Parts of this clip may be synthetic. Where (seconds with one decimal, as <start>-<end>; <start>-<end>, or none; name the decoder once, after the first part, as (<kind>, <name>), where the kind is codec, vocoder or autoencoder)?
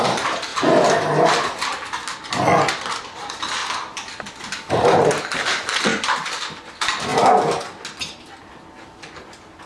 0.0-0.5 (vocoder, BigVGAN v2); 2.7-5.9; 6.6-7.1; 8.5-9.7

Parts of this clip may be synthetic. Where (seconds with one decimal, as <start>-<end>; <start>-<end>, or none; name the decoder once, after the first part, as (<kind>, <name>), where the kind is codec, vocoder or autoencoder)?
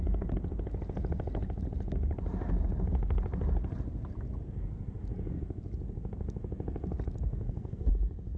7.3-7.9 (codec, SNAC)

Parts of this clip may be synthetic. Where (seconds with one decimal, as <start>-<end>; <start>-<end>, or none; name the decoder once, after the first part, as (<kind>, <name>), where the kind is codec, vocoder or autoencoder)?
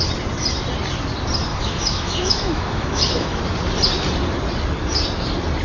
1.5-3.4 (autoencoder, DAC-VAE)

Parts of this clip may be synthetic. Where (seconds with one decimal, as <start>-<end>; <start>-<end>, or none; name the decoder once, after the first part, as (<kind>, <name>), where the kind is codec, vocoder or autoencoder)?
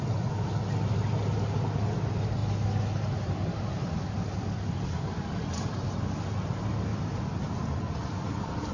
none